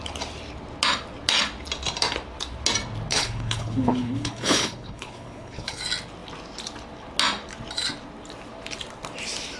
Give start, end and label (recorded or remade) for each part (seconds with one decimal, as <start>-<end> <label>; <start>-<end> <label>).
0.0-3.1 recorded; 3.1-5.8 remade; 5.8-9.6 recorded